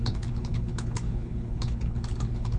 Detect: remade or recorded remade